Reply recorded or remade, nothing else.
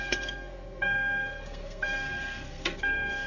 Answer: remade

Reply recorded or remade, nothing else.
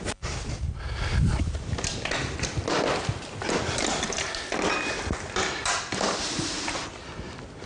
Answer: recorded